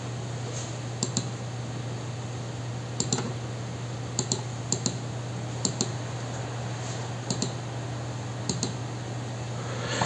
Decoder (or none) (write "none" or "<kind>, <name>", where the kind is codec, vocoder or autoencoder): none